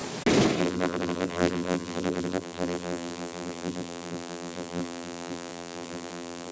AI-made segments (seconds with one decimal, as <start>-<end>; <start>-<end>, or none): 0.6-6.5

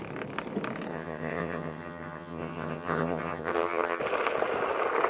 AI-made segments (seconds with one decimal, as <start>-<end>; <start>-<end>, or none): 0.9-4.0

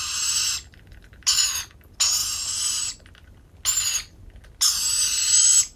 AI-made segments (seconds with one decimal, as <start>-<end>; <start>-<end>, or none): none

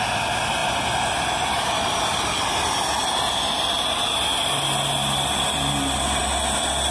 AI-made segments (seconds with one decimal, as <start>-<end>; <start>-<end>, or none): none

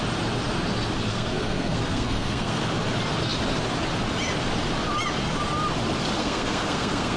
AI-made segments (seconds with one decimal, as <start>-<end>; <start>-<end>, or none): 1.1-2.6; 6.2-7.2

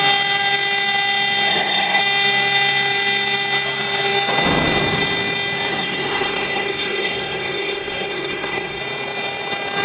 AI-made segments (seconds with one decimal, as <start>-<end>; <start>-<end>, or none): 1.5-2.0; 5.7-8.8